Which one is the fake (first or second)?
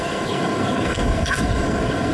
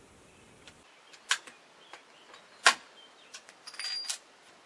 first